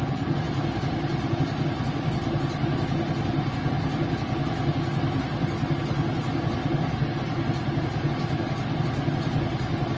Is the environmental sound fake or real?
real